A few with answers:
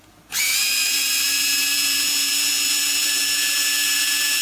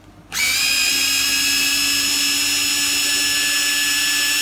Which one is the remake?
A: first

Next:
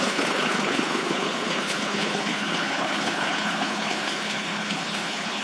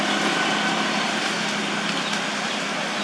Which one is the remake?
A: first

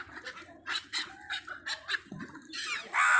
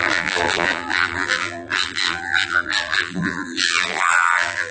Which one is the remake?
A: second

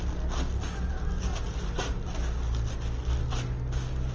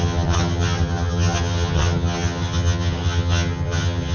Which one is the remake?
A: second